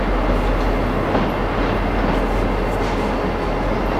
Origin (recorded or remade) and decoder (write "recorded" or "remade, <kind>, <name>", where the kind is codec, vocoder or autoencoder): recorded